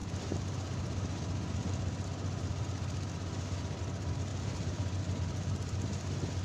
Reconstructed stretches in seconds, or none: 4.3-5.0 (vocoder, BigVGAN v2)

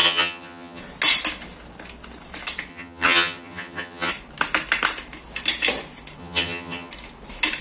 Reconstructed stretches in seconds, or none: 0.0-0.8 (vocoder, HiFi-GAN); 2.7-4.1; 6.2-6.9